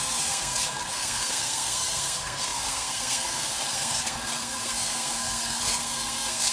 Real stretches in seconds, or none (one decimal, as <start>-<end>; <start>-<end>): none